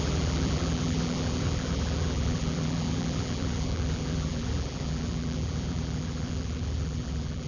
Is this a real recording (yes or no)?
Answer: no